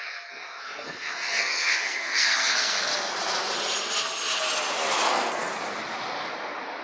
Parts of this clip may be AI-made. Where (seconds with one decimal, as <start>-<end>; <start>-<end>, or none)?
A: 0.0-2.9; 5.1-5.5